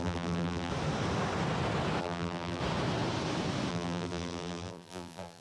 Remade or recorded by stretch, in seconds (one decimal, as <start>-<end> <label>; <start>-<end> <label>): 0.0-0.7 remade; 0.7-2.0 recorded; 2.0-2.6 remade; 2.6-3.7 recorded; 3.7-5.4 remade